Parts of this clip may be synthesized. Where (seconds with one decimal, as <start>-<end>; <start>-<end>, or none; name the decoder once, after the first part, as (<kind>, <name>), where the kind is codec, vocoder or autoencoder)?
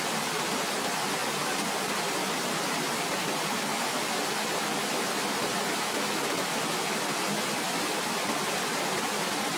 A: none